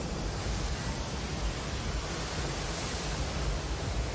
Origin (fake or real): fake